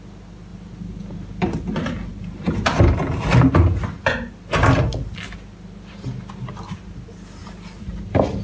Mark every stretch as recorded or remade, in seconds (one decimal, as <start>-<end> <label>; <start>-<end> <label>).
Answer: 0.0-7.4 recorded; 7.4-8.0 remade; 8.0-8.4 recorded